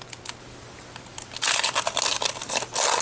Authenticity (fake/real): real